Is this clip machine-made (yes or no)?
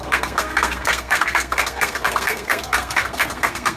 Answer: yes